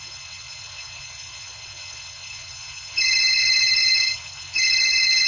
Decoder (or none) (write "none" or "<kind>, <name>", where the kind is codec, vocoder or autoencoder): vocoder, WaveNeXt